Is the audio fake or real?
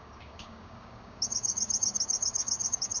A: fake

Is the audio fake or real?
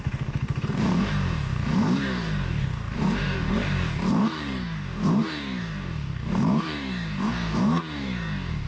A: fake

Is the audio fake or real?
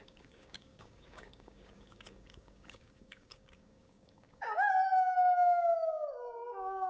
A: fake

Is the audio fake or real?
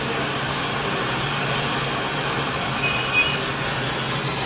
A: real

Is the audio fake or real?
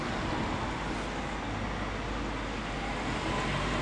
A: real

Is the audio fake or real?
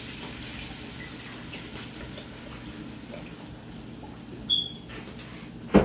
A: real